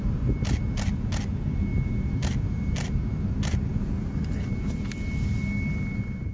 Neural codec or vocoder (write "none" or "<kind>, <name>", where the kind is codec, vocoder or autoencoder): none